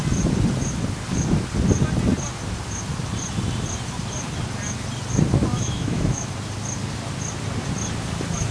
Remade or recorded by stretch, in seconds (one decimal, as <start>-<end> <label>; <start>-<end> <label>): 0.0-5.5 recorded; 5.5-6.3 remade; 6.3-8.5 recorded